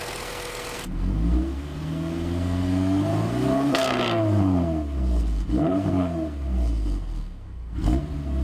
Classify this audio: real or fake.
fake